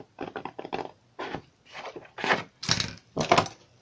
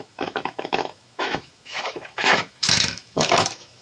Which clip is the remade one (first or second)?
second